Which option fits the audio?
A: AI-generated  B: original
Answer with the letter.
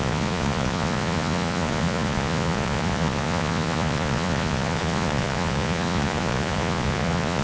A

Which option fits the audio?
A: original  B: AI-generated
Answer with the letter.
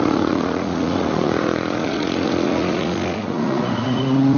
B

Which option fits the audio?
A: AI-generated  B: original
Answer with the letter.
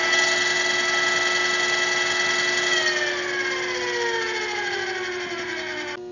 B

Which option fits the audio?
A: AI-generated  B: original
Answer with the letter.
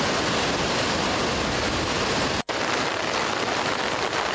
B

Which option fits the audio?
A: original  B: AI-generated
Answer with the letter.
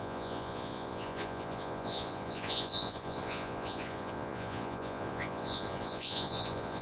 B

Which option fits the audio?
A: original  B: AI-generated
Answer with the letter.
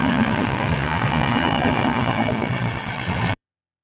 B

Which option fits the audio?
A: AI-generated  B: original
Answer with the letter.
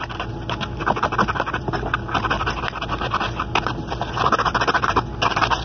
B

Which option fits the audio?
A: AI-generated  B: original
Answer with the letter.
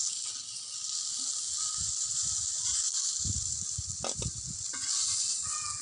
B